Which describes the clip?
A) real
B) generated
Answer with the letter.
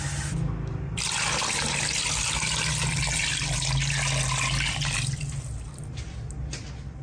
A